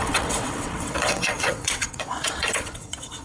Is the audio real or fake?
fake